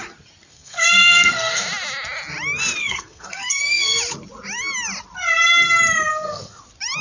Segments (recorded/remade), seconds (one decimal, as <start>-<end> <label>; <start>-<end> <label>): 0.0-0.5 recorded; 0.5-1.6 remade; 1.6-2.8 recorded; 2.8-4.0 remade; 4.0-6.1 recorded; 6.1-6.6 remade; 6.6-7.0 recorded